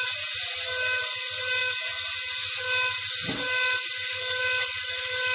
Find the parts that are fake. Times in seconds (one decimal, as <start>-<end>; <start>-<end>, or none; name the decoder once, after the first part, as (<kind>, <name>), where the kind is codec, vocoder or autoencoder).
none